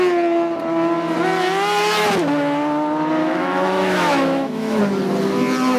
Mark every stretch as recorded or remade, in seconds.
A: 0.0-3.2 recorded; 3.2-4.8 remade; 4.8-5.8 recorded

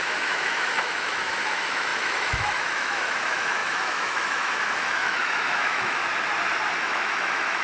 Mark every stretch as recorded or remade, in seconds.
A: 0.0-6.0 remade; 6.0-6.8 recorded; 6.8-7.6 remade

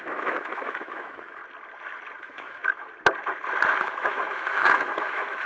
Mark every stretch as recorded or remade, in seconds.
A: 0.0-1.4 remade; 1.4-2.2 recorded; 2.2-2.6 remade; 2.6-3.8 recorded; 3.8-5.5 remade

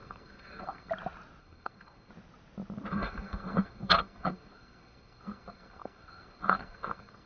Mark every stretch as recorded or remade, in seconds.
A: 0.0-0.9 remade; 0.9-1.4 recorded; 1.4-2.1 remade; 2.1-2.9 recorded; 2.9-7.3 remade

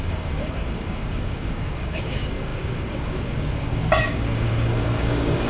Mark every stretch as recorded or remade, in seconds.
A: 0.0-5.5 remade

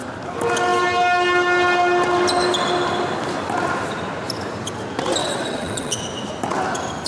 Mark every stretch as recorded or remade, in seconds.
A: 0.0-5.2 recorded; 5.2-6.0 remade; 6.0-7.1 recorded